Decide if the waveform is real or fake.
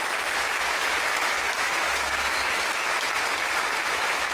fake